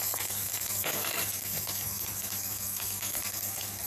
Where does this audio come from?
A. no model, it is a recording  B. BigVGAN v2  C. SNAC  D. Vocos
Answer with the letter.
C